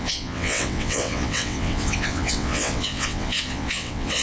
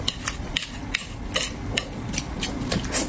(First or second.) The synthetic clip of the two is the first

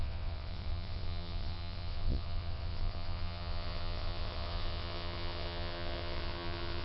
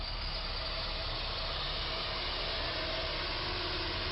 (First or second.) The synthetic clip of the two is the first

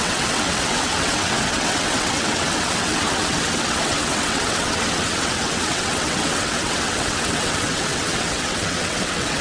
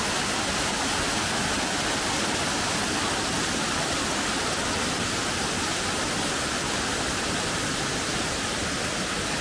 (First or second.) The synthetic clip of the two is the first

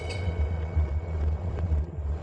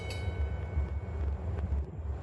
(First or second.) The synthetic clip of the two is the first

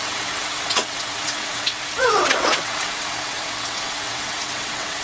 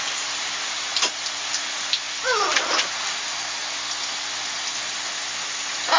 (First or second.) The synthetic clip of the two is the first